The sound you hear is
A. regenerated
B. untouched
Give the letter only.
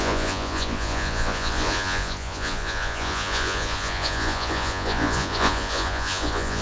A